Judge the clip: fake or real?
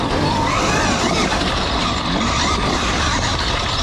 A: real